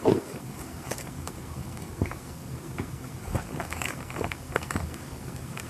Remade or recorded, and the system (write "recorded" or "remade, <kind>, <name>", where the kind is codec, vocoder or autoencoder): remade, codec, SNAC